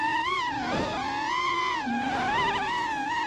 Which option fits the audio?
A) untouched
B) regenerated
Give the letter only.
A